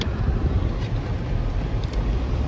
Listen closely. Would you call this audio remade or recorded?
remade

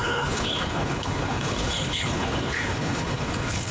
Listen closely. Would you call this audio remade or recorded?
remade